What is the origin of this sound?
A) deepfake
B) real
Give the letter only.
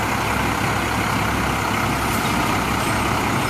B